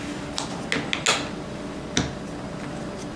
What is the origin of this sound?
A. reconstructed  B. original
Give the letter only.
B